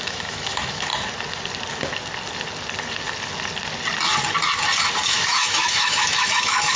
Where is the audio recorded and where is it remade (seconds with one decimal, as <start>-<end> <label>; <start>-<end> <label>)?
0.0-0.9 remade; 0.9-5.0 recorded; 5.0-6.8 remade